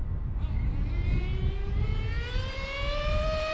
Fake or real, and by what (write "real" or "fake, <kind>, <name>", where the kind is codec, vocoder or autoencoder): real